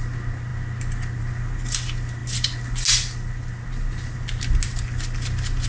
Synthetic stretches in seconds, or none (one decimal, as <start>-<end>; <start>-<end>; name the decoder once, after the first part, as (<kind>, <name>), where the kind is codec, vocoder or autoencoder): none